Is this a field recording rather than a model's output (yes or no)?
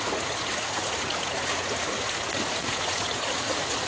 no